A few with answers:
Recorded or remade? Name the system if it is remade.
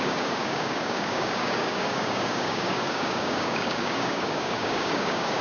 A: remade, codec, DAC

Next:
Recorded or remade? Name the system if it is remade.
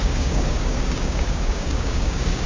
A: remade, codec, DAC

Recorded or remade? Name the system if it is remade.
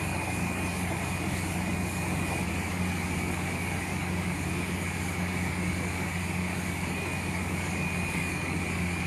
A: remade, codec, DAC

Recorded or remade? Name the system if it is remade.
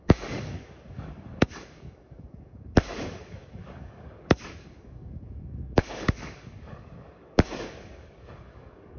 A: remade, codec, DAC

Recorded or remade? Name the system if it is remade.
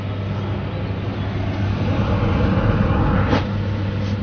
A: recorded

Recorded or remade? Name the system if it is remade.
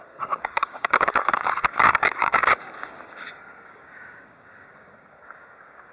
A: remade, codec, DAC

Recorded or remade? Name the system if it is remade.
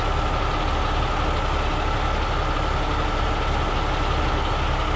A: recorded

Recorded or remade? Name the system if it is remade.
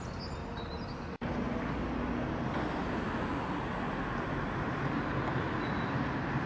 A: recorded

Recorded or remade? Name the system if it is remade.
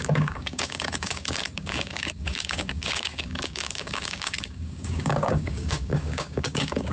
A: remade, codec, DAC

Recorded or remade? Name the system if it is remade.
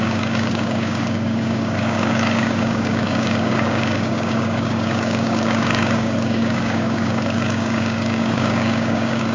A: remade, codec, DAC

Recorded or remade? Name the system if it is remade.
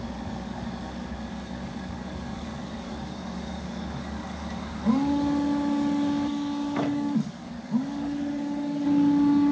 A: remade, codec, DAC